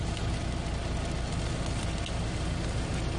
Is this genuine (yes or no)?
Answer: yes